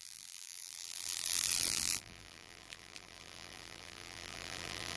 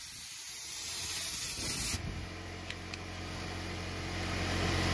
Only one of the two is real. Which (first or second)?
second